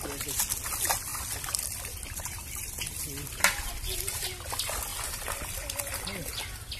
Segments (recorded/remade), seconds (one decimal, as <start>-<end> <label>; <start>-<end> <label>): 0.0-1.1 recorded; 1.1-2.7 remade; 2.7-4.9 recorded; 4.9-6.0 remade; 6.0-6.8 recorded